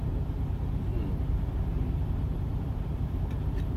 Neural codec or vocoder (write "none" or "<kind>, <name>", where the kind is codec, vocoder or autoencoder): vocoder, BigVGAN v2